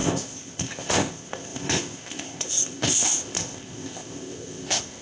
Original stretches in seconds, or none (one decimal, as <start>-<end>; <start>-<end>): none